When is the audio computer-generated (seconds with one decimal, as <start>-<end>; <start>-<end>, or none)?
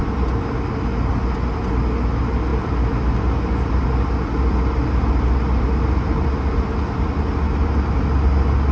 none